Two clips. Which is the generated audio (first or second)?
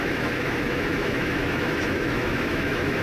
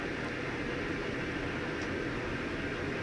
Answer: first